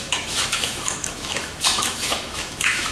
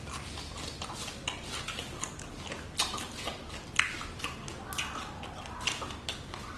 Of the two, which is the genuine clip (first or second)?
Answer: second